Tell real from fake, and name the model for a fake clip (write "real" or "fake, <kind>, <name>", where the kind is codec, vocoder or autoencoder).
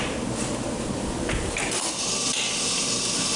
fake, vocoder, BigVGAN v2